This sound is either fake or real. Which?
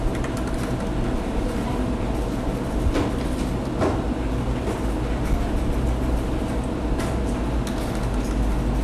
real